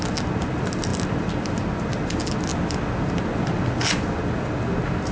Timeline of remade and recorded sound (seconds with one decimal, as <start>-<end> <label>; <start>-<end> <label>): 0.0-5.1 recorded